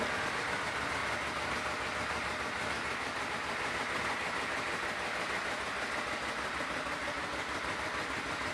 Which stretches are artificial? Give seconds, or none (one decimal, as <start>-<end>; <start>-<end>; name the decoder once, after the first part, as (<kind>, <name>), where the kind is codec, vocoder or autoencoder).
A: none